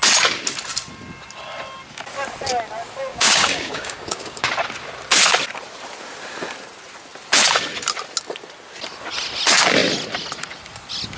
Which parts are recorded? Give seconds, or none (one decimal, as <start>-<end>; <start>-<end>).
0.0-3.1; 4.5-11.2